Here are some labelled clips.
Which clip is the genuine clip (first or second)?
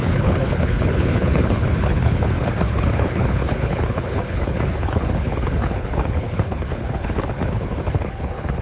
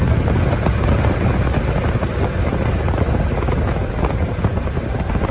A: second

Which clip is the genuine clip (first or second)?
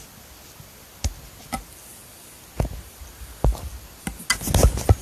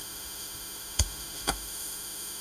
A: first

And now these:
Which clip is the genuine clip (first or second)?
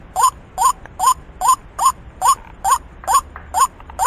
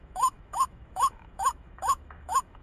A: first